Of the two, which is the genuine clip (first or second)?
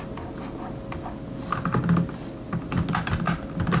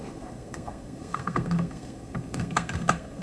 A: first